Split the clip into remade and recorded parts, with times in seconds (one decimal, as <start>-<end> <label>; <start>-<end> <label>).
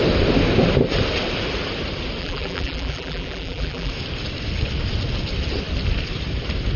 0.0-2.2 recorded; 2.2-3.9 remade; 3.9-6.8 recorded